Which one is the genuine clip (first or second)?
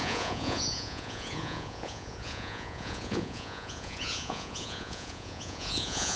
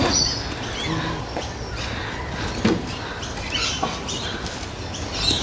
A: second